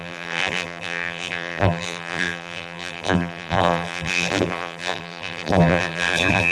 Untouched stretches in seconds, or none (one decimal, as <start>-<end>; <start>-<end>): none